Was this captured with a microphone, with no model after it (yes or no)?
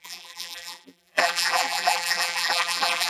no